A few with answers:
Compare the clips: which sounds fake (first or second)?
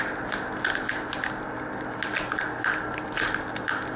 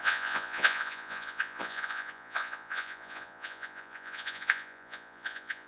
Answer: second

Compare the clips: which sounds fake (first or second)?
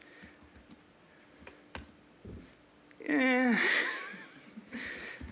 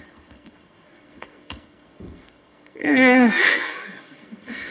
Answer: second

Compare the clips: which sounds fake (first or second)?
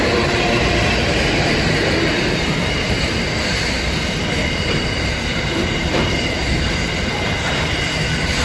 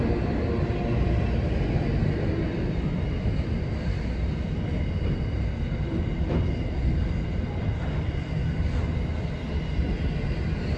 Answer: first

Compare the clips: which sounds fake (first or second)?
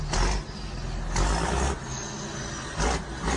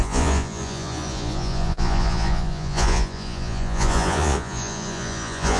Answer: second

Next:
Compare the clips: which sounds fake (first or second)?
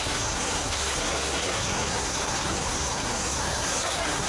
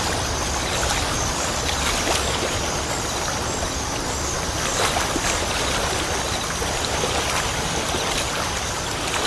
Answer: first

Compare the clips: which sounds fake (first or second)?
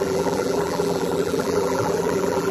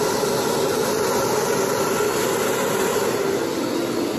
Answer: first